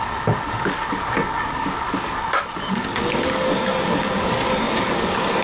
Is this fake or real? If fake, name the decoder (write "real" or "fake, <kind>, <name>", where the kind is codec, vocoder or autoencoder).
fake, codec, DAC